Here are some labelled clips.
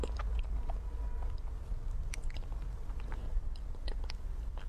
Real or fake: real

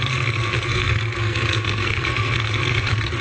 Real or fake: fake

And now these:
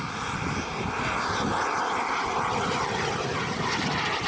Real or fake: real